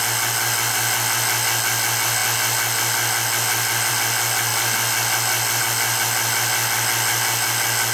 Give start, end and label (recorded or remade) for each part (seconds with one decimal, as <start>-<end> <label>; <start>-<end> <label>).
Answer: 0.0-7.9 recorded

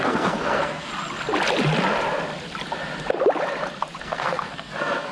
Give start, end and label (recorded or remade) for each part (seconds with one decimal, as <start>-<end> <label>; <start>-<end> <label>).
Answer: 0.0-0.9 remade; 0.9-4.0 recorded; 4.0-5.1 remade

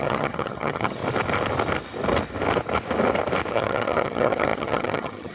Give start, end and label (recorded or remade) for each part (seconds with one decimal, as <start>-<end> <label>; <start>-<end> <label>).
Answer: 0.0-1.0 remade; 1.0-3.5 recorded; 3.5-5.3 remade